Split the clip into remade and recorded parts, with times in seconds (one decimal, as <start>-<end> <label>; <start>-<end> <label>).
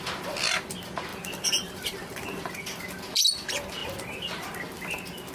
0.0-1.1 recorded; 1.1-2.8 remade; 2.8-5.3 recorded